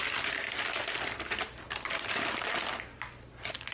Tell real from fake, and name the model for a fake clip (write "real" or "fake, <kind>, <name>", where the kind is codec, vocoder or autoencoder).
real